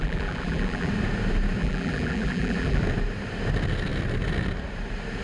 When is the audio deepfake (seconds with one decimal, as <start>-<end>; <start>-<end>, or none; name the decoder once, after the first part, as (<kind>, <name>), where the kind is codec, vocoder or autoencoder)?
0.0-0.9 (vocoder, BigVGAN v2); 1.6-2.8

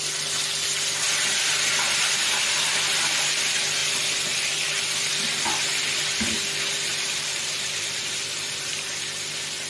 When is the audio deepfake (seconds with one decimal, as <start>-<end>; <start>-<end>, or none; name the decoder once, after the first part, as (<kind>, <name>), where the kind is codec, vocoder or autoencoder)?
6.9-8.9 (vocoder, BigVGAN v2)

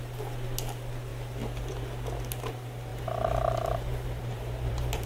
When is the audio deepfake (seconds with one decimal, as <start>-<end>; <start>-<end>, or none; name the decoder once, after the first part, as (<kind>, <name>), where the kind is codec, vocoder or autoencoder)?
2.9-5.1 (vocoder, BigVGAN v2)

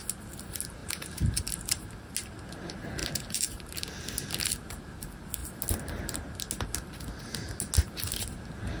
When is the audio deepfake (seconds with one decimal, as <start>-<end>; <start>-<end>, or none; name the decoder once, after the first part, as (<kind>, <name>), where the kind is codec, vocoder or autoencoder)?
0.8-2.1 (vocoder, BigVGAN v2); 3.0-3.9